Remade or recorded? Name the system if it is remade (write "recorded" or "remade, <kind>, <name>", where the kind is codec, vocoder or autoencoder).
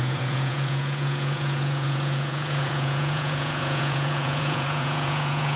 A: remade, vocoder, Vocos